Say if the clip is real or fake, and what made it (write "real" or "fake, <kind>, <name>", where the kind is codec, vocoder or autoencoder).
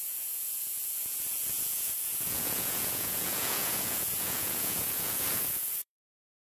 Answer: fake, vocoder, Vocos